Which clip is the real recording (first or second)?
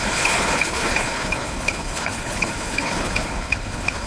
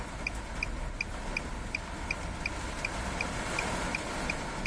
second